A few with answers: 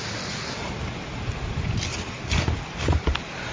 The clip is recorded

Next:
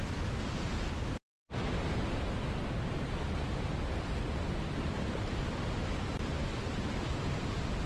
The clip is recorded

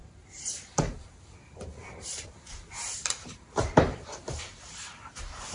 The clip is remade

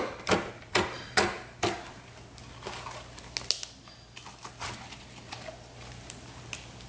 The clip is recorded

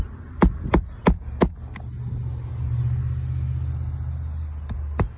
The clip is recorded